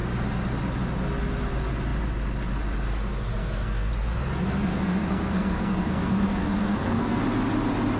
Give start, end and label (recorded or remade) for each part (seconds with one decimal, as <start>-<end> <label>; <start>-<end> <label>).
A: 0.0-3.4 recorded; 3.4-3.9 remade; 3.9-4.7 recorded; 4.7-7.2 remade; 7.2-8.0 recorded